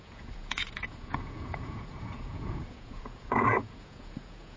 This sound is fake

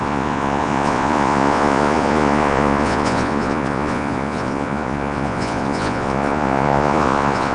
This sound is fake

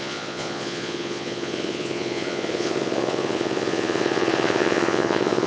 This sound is fake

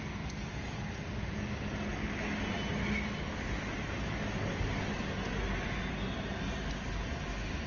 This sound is real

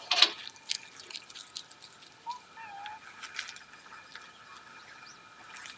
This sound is real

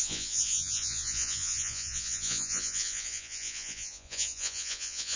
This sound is fake